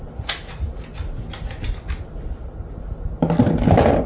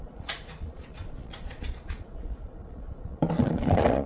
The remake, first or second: second